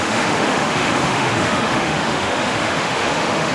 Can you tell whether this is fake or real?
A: fake